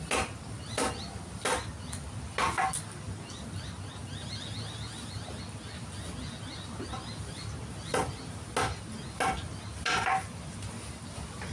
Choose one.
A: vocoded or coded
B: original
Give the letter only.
B